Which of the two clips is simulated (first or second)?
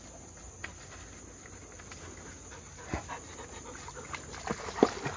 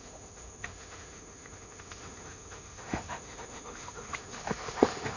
second